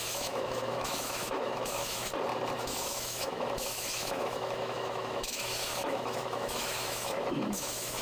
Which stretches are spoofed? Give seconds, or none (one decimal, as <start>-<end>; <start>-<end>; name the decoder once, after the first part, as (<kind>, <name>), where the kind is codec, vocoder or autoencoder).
0.0-2.1 (autoencoder, DAC-VAE); 2.6-8.0

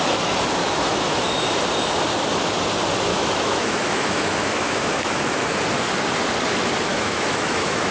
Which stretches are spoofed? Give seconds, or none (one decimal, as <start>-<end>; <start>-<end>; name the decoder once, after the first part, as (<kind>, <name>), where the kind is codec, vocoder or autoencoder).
0.6-1.3 (autoencoder, DAC-VAE); 3.1-5.2; 6.9-7.9

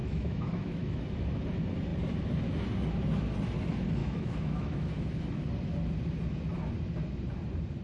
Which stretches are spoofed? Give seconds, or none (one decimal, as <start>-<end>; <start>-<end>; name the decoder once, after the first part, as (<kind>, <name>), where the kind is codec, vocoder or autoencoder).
0.0-1.0 (autoencoder, DAC-VAE); 4.0-4.9

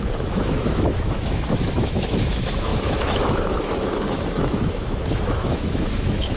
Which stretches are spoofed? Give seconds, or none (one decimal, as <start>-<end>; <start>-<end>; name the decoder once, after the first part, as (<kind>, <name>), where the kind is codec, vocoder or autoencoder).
0.0-6.4 (autoencoder, DAC-VAE)

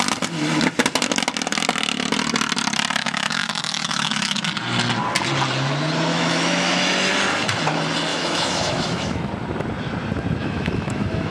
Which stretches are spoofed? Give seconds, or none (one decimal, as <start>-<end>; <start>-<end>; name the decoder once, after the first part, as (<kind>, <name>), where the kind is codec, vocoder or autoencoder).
3.0-4.5 (autoencoder, DAC-VAE); 6.1-7.1; 8.1-9.3; 10.4-11.3

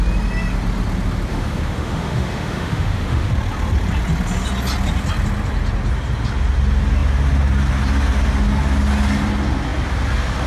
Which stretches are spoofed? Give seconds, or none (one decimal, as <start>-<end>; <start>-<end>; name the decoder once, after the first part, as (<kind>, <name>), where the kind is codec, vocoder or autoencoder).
1.3-3.3 (autoencoder, DAC-VAE)